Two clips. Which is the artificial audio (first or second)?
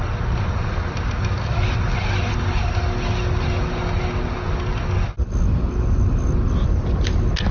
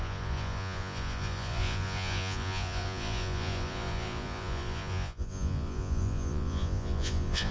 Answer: second